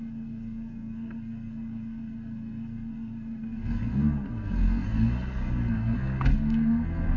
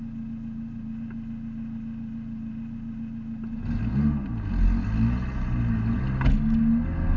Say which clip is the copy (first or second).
first